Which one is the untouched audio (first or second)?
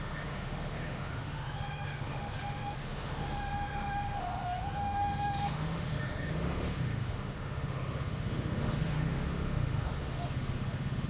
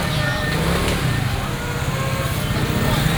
second